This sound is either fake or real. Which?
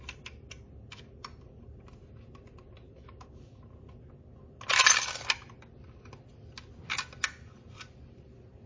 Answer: real